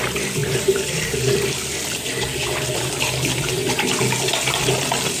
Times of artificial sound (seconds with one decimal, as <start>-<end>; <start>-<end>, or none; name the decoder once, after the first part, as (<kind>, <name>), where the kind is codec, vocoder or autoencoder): 0.4-3.5 (vocoder, BigVGAN v2)